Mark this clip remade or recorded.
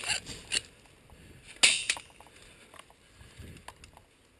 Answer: recorded